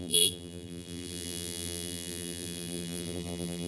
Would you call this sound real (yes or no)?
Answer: no